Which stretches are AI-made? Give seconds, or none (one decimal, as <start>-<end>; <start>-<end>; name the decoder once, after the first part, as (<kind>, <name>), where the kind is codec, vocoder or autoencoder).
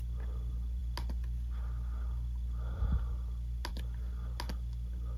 none